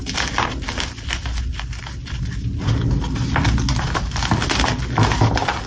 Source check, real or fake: real